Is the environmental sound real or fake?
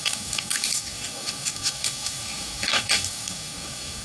fake